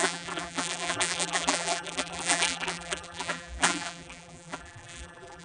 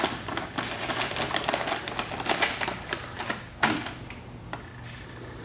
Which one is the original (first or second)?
second